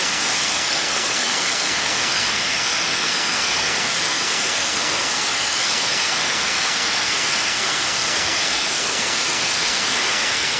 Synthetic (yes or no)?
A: yes